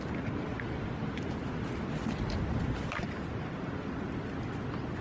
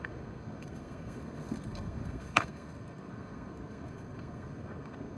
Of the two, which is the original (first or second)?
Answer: first